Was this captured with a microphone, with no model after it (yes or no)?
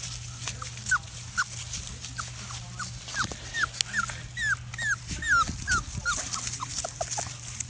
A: yes